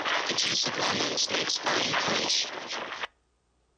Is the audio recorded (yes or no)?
yes